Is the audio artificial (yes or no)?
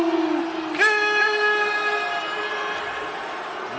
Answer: no